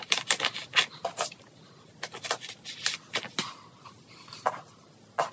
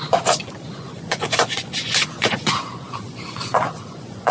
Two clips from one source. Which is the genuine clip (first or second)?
first